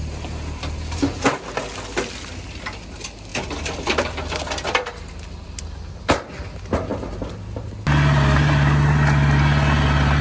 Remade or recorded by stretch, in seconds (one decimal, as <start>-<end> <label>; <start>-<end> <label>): 0.0-3.3 recorded; 3.3-5.9 remade; 5.9-10.2 recorded

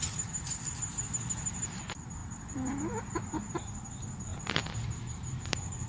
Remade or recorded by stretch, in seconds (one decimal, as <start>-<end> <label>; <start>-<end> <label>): 0.0-2.2 recorded; 2.2-2.7 remade; 2.7-4.3 recorded; 4.3-5.9 remade

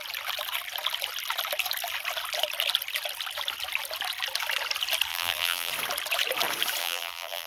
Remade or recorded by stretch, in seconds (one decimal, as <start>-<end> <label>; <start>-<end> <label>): 0.0-5.1 recorded; 5.1-5.7 remade; 5.7-6.8 recorded; 6.8-7.5 remade

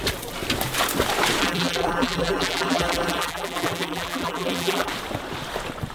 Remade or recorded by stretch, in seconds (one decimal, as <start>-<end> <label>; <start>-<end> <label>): 0.0-1.4 recorded; 1.4-4.9 remade; 4.9-5.9 recorded

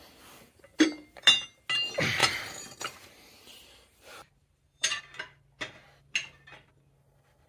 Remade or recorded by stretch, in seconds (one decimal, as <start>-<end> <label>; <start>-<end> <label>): 0.0-2.2 recorded; 2.2-5.0 remade; 5.0-7.5 recorded